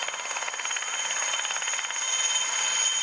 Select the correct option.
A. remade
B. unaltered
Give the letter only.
B